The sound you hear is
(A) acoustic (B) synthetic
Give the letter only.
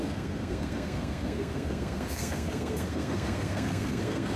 B